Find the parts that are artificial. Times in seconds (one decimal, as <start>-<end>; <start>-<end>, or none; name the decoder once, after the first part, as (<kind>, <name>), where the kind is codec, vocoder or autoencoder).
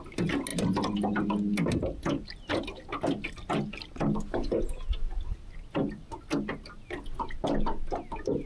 none